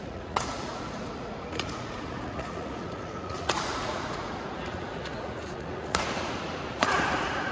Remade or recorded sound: remade